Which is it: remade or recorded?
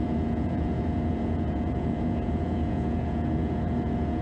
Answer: remade